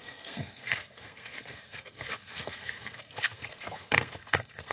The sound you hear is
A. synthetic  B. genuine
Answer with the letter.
A